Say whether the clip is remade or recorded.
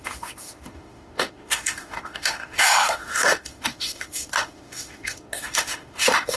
remade